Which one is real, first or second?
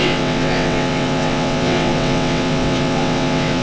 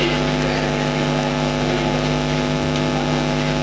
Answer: second